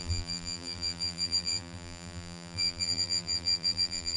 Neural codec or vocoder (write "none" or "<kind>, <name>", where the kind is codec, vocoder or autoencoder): vocoder, BigVGAN v2